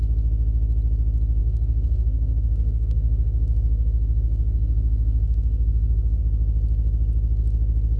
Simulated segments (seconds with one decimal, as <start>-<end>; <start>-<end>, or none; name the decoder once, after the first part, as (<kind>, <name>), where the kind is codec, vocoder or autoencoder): 1.4-6.2 (codec, SNAC)

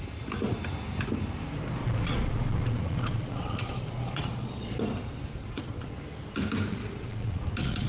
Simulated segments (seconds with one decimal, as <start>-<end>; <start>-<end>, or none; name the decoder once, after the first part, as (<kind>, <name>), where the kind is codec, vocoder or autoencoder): 1.8-4.8 (vocoder, Vocos); 5.4-6.0; 6.7-7.9

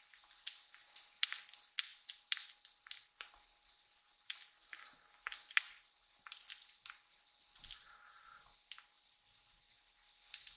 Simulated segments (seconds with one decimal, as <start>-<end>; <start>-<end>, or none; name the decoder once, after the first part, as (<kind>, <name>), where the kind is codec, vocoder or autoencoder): none

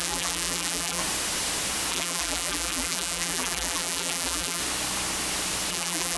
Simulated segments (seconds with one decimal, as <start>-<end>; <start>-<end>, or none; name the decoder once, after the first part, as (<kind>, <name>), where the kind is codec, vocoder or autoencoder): 0.0-1.0 (vocoder, BigVGAN v2); 1.9-4.6; 5.7-6.2

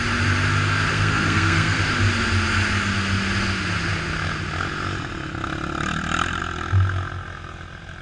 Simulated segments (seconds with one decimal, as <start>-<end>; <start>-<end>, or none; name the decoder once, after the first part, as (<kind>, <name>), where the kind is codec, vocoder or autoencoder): 0.9-1.8 (codec, SNAC)